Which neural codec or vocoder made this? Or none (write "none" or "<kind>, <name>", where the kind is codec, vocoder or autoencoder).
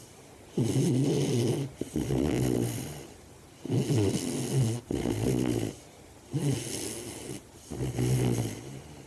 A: none